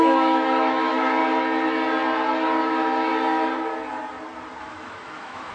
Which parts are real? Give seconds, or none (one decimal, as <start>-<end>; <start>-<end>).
1.2-2.6; 3.1-4.6

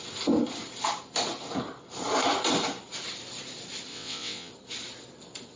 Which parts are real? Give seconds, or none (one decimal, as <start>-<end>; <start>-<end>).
0.0-3.9; 4.5-5.6

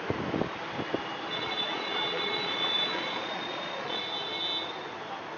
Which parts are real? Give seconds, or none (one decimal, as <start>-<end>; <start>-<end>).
0.0-1.3; 4.0-5.4

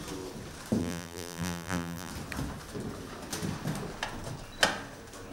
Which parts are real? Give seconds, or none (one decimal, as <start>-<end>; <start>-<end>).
0.0-0.8; 2.1-5.3

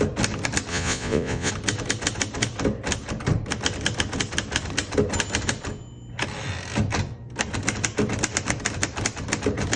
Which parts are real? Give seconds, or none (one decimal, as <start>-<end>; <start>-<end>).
0.0-0.7; 1.5-9.8